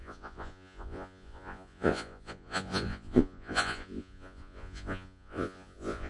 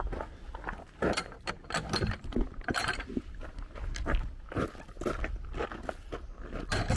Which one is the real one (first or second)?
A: second